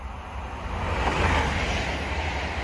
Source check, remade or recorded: recorded